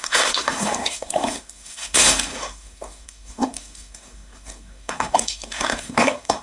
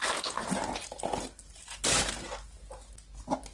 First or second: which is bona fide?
second